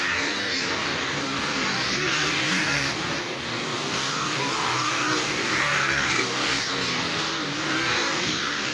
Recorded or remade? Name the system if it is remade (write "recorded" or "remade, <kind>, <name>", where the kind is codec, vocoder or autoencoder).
remade, codec, DAC